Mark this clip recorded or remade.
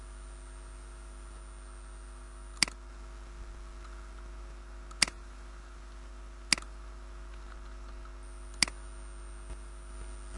recorded